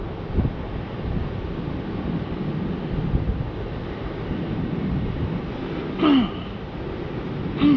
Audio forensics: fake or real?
real